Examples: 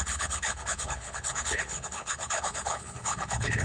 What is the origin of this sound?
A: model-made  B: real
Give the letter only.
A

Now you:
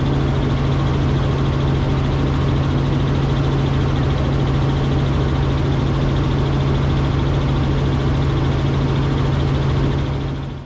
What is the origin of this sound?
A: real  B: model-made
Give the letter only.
A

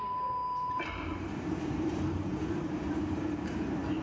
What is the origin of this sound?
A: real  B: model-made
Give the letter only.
B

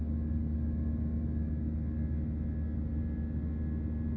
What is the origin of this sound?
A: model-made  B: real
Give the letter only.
B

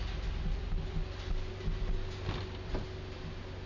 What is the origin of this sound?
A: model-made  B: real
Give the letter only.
B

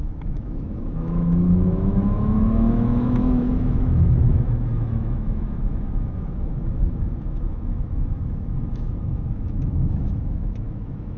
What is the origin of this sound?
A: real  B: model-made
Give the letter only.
B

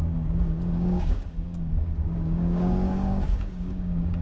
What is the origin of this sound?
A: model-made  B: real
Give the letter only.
A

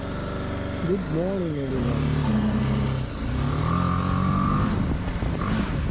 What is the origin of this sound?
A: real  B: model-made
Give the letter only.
A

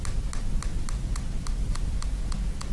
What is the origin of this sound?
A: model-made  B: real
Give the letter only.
B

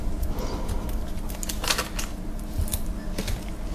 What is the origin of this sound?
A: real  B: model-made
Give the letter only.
A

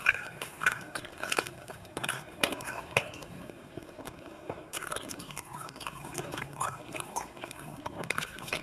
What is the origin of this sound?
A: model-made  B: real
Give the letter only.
A